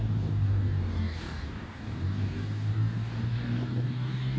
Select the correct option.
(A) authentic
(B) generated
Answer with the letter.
B